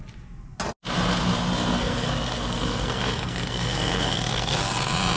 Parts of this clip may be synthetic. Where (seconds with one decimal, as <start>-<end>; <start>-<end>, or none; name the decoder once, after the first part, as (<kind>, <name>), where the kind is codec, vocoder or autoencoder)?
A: 1.7-4.8 (codec, SNAC)